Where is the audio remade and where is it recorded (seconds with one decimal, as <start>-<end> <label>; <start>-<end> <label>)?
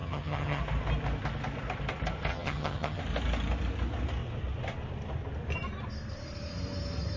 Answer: 0.0-0.6 remade; 0.6-2.3 recorded; 2.3-3.0 remade; 3.0-7.2 recorded